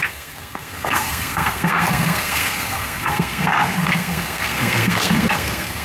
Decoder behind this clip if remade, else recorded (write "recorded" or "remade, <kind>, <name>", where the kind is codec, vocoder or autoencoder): remade, codec, SNAC